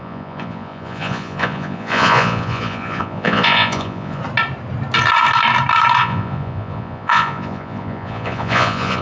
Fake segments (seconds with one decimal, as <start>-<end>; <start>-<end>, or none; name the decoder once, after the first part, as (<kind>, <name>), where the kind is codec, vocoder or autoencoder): 0.0-4.2 (vocoder, Vocos); 6.0-9.0